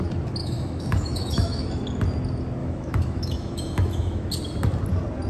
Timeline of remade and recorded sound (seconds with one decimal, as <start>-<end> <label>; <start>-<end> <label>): 0.0-0.4 recorded; 0.4-1.8 remade; 1.8-2.6 recorded; 2.6-4.3 remade; 4.3-5.3 recorded